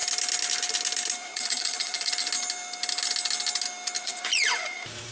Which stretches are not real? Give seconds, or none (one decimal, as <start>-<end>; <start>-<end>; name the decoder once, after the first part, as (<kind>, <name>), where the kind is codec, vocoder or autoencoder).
1.2-2.1 (vocoder, Vocos); 4.0-5.1